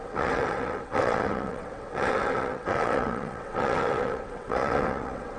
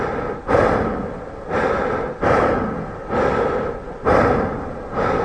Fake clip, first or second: first